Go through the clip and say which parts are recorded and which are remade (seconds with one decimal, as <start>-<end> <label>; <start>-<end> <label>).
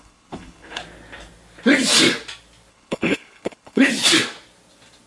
0.0-0.8 remade; 0.8-2.7 recorded; 2.7-3.9 remade; 3.9-5.1 recorded